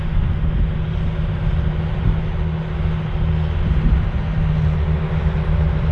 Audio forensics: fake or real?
real